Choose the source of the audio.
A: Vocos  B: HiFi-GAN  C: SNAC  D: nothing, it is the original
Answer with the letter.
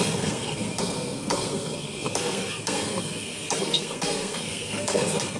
C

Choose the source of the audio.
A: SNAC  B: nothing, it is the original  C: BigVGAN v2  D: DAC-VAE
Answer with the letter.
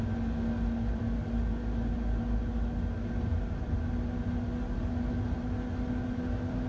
B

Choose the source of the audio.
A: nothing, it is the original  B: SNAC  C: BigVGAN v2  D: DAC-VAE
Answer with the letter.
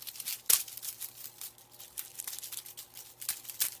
A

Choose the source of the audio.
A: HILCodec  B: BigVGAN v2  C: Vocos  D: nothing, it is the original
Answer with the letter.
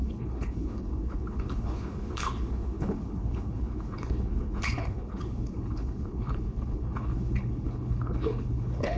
A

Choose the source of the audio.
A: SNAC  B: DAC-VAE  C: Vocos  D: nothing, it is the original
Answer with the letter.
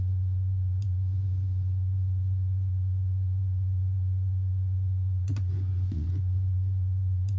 C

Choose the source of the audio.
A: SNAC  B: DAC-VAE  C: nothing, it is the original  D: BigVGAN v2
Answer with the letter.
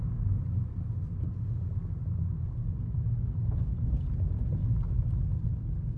C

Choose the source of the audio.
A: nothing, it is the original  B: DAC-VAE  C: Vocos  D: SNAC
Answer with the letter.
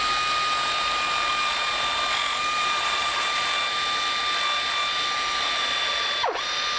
A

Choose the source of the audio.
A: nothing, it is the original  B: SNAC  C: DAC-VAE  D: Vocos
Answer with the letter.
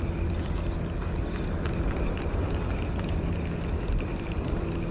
A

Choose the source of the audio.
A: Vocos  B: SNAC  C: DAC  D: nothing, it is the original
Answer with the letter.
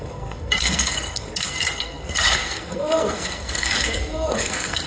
B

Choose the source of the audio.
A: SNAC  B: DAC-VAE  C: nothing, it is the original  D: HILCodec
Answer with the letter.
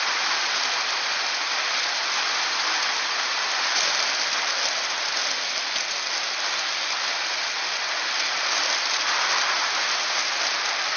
C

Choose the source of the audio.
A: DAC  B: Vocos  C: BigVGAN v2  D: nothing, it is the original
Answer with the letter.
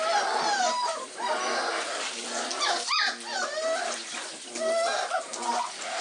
D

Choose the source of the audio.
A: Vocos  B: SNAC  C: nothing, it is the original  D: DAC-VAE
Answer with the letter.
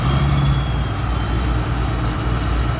C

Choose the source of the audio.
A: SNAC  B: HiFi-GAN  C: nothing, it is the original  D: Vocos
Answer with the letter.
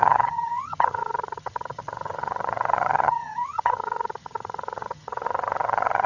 B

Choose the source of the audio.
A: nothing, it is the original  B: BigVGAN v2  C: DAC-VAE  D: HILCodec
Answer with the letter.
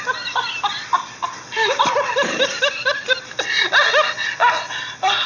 A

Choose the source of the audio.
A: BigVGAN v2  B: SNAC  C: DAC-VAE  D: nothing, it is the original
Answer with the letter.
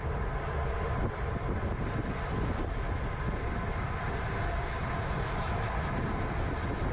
D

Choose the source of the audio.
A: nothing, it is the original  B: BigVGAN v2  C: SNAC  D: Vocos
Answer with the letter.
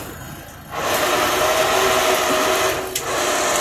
A